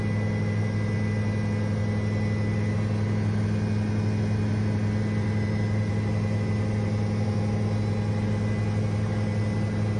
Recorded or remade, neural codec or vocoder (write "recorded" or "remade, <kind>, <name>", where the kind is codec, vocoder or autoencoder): recorded